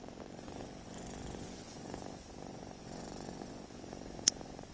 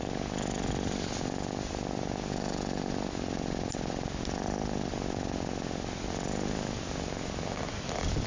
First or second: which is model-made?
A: first